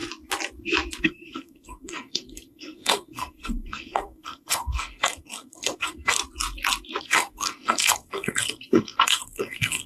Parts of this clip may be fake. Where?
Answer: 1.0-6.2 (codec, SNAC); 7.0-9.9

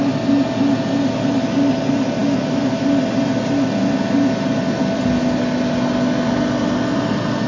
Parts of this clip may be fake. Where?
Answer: none

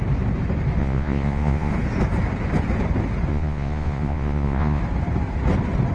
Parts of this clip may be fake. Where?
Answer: 0.8-1.7 (vocoder, Vocos); 3.3-4.8

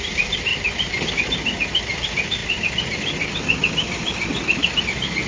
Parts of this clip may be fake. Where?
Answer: 0.5-1.1 (vocoder, BigVGAN v2)

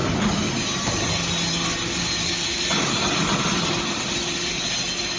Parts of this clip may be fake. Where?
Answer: none

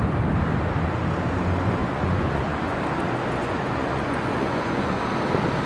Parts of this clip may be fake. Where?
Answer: 1.8-2.8 (vocoder, Vocos); 3.4-5.0

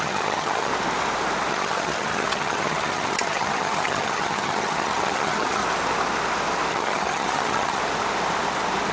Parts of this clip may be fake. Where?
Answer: 0.0-0.7 (vocoder, HiFi-GAN); 1.5-5.6; 6.7-7.8